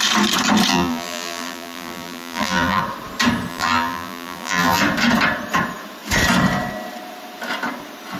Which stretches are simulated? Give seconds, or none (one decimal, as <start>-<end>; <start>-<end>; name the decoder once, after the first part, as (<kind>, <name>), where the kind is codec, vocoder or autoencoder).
0.7-2.8 (vocoder, BigVGAN v2); 3.5-4.8